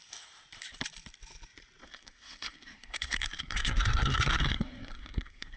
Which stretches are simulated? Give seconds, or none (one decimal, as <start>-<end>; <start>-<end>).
1.8-5.6